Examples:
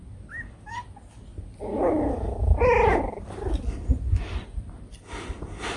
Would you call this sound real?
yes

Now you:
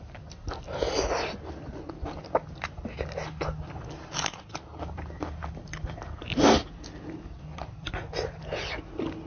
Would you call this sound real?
yes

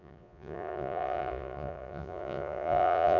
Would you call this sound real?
no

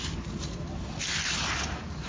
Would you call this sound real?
yes